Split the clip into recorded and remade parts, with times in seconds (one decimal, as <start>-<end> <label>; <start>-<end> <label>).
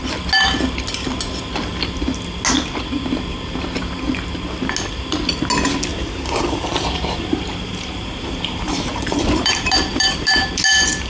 0.0-5.9 recorded; 5.9-10.5 remade; 10.5-11.1 recorded